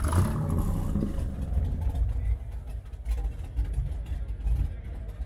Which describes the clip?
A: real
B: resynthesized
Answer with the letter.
A